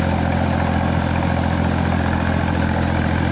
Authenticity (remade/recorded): recorded